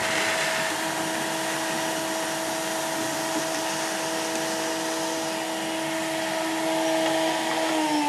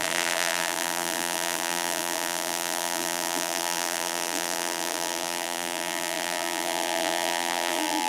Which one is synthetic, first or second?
second